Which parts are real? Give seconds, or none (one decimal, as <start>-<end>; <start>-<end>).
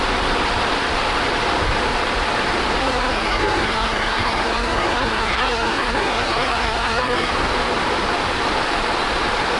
0.0-2.8; 7.3-9.6